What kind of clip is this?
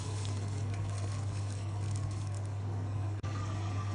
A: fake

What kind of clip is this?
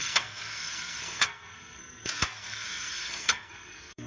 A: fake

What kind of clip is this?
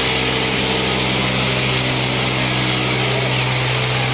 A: real